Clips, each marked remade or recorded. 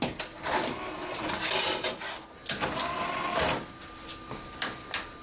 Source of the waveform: recorded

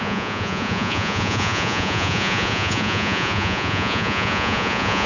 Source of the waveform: remade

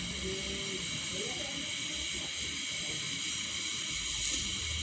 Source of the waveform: recorded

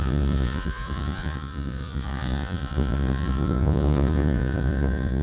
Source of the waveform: remade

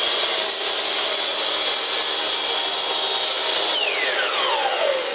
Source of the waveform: recorded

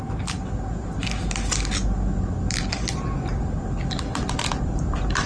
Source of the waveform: recorded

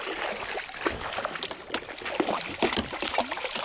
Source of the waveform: recorded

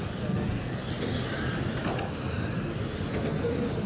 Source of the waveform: recorded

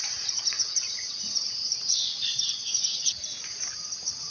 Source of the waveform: remade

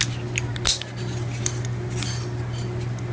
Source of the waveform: recorded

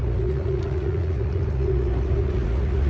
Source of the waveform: remade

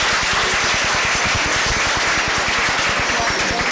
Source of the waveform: recorded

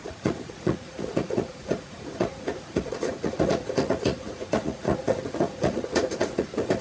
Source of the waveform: remade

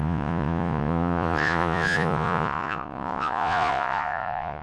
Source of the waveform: remade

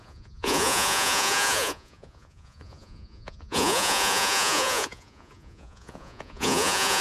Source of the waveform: remade